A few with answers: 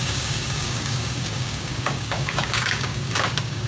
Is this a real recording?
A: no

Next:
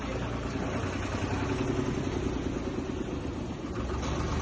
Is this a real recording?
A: yes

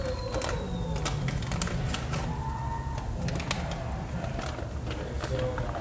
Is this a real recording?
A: yes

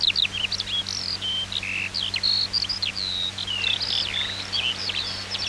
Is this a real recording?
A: yes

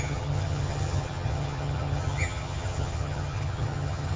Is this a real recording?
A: no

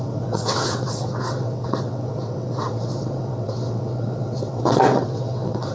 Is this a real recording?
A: no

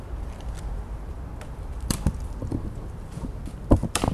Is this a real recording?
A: no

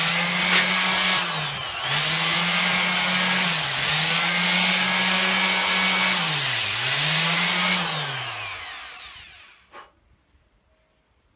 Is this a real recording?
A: yes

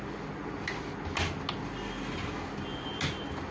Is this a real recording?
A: yes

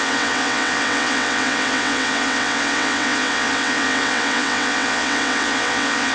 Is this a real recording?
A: no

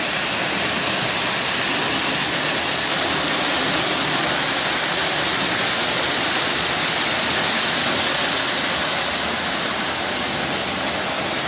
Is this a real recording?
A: yes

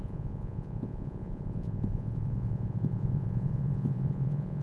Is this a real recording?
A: no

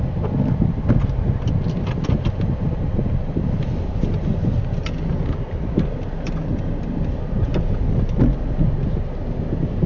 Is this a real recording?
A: yes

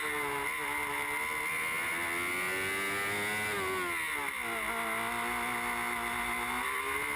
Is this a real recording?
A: yes